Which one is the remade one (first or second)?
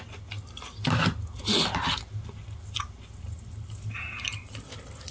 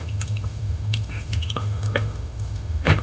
second